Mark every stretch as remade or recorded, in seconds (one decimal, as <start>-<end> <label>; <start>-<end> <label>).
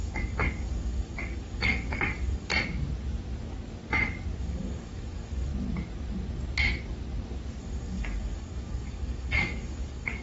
0.0-2.5 remade; 2.5-4.4 recorded; 4.4-5.5 remade; 5.5-7.6 recorded; 7.6-10.2 remade